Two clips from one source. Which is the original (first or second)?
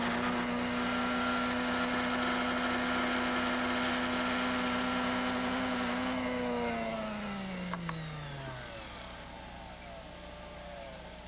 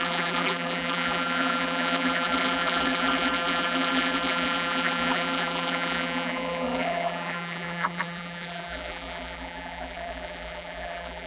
first